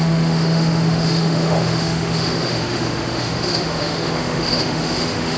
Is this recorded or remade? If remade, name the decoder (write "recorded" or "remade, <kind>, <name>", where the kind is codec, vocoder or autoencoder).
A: remade, autoencoder, DAC-VAE